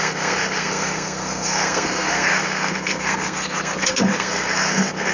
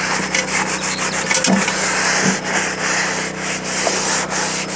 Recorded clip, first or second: second